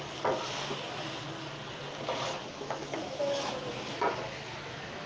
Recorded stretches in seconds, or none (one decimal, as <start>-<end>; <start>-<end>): 0.0-2.4